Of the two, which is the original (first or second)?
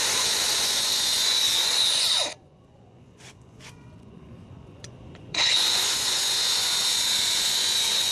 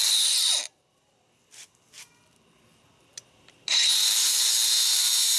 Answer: second